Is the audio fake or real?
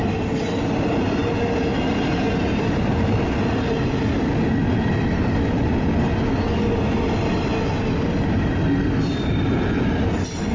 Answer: real